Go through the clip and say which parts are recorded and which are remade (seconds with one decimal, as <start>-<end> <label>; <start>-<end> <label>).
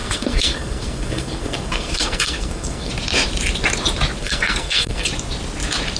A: 0.0-2.9 remade; 2.9-4.2 recorded; 4.2-5.1 remade; 5.1-6.0 recorded